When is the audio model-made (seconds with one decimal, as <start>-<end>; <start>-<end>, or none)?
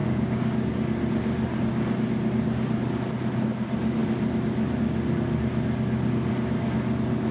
0.0-0.7